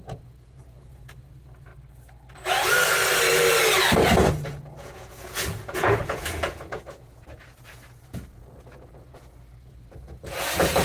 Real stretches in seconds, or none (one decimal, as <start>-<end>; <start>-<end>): 1.7-4.3